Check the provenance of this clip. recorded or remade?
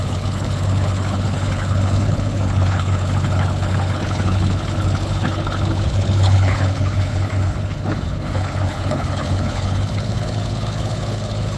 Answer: remade